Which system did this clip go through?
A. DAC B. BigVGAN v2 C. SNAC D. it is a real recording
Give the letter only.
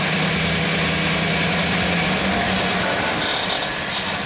D